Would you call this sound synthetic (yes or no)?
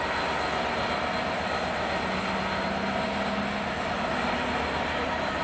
no